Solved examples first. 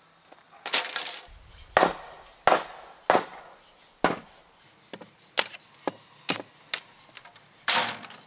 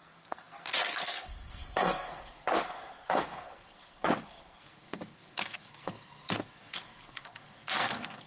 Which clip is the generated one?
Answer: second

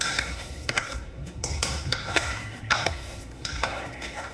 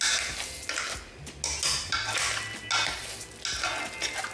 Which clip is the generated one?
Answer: first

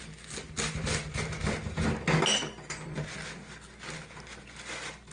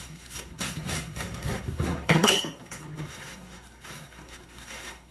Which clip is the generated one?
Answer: second